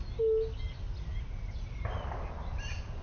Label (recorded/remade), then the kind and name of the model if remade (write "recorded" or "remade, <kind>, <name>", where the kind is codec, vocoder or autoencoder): recorded